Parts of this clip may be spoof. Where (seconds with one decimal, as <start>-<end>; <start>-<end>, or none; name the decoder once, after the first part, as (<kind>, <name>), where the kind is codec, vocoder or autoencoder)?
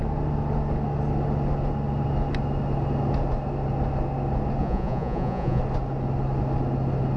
4.6-5.6 (vocoder, Vocos)